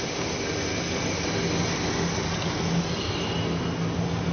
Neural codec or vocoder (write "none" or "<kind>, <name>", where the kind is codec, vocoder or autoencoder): none